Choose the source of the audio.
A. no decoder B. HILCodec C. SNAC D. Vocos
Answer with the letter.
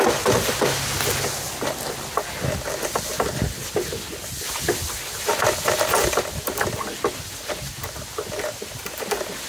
A